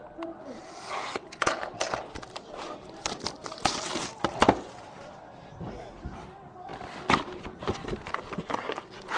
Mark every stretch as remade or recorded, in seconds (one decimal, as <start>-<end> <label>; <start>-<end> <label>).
0.0-9.2 recorded